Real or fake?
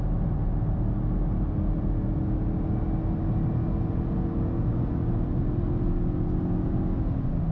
real